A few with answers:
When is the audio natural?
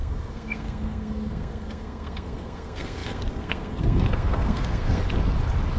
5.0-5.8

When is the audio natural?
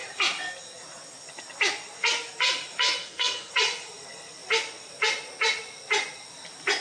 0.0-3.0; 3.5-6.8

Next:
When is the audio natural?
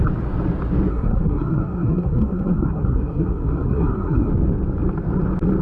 0.0-0.9; 4.3-5.6